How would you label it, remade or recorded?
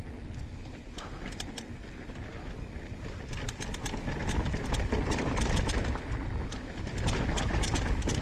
recorded